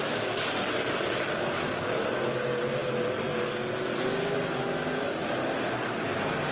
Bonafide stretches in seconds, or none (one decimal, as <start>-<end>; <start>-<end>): 0.0-6.5